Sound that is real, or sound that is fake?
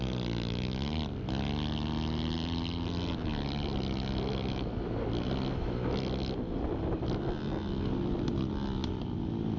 real